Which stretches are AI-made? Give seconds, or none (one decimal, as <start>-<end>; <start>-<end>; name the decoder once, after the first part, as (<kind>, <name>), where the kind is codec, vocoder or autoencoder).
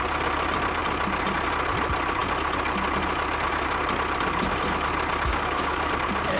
5.3-5.9 (codec, DAC)